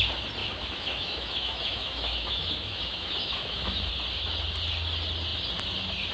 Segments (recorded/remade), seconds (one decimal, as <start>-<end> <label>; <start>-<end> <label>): 0.0-0.4 recorded; 0.4-3.9 remade; 3.9-6.1 recorded